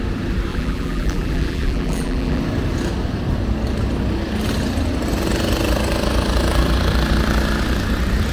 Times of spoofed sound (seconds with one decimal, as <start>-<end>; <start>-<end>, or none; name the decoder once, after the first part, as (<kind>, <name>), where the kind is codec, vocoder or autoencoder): 0.5-2.4 (vocoder, BigVGAN v2)